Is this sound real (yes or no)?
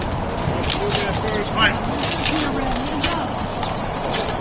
yes